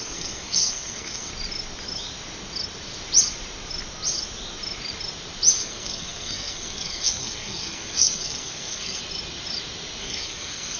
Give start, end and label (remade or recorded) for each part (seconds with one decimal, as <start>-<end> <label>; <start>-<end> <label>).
0.0-1.3 remade; 1.3-5.6 recorded; 5.6-9.0 remade; 9.0-10.0 recorded; 10.0-10.8 remade